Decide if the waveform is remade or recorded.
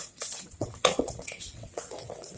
remade